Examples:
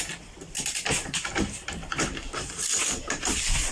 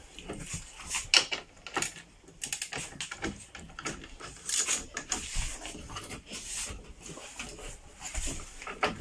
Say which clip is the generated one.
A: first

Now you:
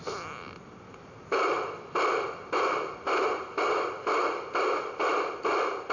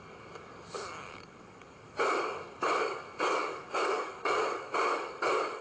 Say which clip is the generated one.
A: second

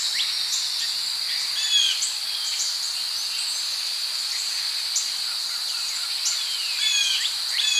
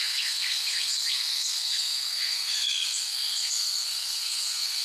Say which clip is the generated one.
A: second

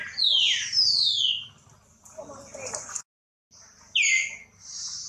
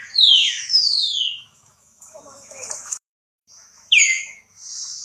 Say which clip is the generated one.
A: second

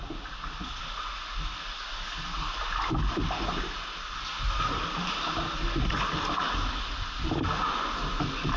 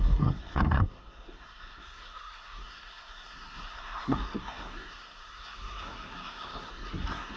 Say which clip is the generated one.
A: second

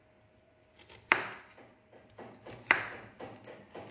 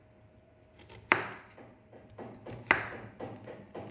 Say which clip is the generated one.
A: second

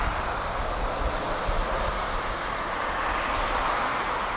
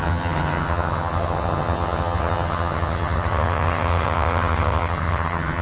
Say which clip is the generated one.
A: second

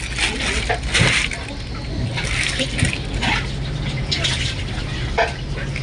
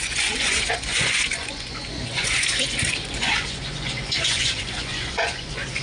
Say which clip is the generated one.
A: second